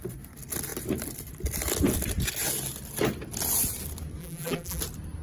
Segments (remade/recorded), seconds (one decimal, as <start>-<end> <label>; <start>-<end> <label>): 0.0-4.2 recorded; 4.2-4.8 remade; 4.8-5.2 recorded